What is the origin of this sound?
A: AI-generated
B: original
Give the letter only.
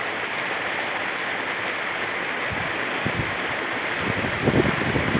B